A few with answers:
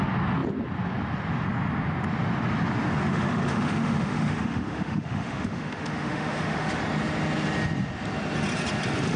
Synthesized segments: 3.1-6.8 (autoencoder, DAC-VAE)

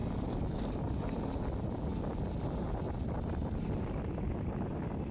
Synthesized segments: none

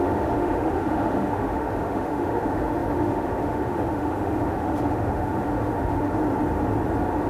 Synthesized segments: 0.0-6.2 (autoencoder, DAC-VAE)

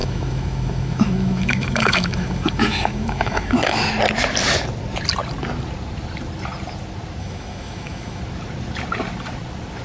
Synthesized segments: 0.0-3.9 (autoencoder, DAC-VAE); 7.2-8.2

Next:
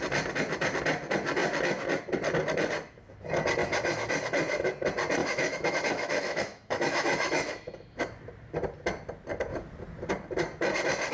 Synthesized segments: 3.6-4.1 (autoencoder, DAC-VAE); 5.2-8.0

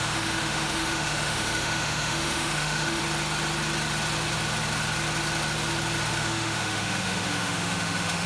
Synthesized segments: 0.0-3.0 (autoencoder, DAC-VAE); 6.1-8.3

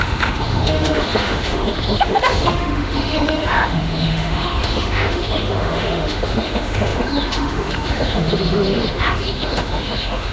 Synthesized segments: 0.0-10.3 (autoencoder, DAC-VAE)